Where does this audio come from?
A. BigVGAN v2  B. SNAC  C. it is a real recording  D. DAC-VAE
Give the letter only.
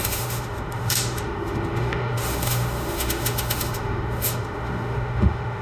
D